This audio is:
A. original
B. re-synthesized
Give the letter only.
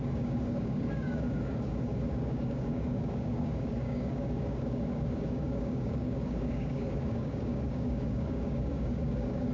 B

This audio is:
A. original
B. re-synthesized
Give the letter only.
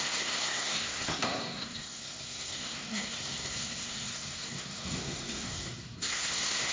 B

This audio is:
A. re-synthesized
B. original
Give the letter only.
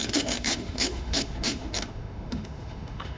A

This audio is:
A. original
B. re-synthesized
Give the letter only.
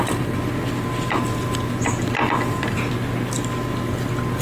A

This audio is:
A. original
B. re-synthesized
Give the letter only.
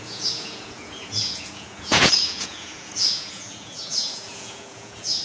B